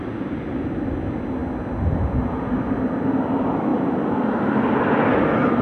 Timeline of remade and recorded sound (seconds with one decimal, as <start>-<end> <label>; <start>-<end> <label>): 0.0-5.6 recorded